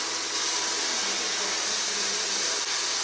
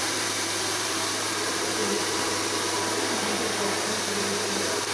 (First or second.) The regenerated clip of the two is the second